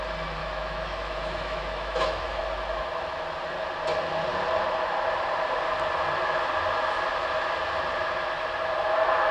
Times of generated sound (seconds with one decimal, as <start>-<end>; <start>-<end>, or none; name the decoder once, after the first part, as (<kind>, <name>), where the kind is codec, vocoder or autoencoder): 0.4-2.4 (autoencoder, DAC-VAE)

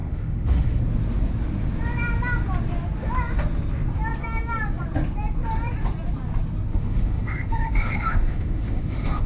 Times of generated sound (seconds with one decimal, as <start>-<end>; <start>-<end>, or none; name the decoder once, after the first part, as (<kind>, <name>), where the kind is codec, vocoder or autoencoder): 0.0-0.8 (autoencoder, DAC-VAE); 6.7-9.3